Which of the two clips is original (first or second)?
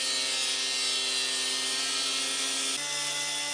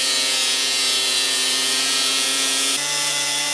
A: first